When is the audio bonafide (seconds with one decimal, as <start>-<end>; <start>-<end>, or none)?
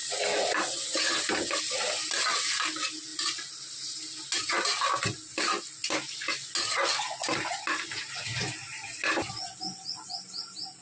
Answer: 0.0-10.8